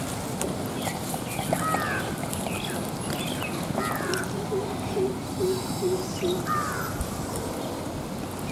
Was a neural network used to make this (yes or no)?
no